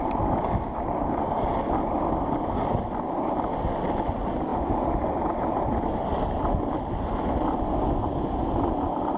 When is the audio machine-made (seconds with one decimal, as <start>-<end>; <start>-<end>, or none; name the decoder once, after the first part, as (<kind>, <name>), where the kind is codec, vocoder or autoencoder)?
none